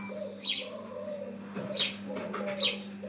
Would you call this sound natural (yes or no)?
yes